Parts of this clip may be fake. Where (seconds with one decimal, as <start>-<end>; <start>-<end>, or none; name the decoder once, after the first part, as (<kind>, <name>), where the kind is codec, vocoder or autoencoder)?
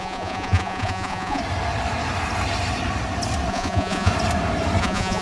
0.0-1.4 (vocoder, Vocos); 3.5-4.1; 4.8-5.2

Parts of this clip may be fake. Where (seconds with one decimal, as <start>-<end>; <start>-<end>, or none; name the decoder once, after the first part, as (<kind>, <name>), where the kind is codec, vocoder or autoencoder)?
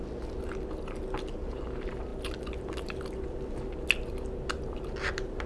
none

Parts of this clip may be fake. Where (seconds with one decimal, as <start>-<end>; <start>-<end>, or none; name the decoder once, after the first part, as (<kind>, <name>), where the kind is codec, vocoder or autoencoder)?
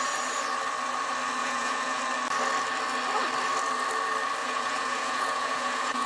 1.4-2.0 (vocoder, Vocos); 4.4-6.1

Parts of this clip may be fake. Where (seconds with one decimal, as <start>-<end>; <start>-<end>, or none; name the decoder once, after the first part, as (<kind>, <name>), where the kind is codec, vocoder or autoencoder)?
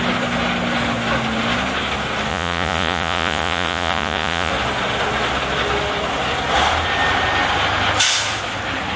2.3-4.5 (vocoder, Vocos)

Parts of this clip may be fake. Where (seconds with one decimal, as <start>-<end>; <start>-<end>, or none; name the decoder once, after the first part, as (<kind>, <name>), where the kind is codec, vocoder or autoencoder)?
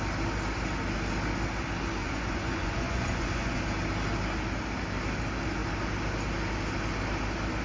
2.0-3.6 (vocoder, Vocos)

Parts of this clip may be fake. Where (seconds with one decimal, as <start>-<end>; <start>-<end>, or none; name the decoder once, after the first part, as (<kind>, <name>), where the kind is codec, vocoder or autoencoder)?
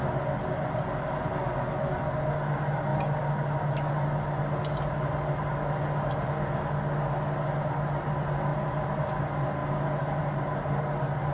none